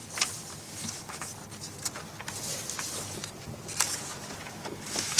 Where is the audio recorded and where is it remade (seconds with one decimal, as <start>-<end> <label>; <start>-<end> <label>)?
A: 0.0-0.6 recorded; 0.6-1.3 remade; 1.3-4.4 recorded; 4.4-5.2 remade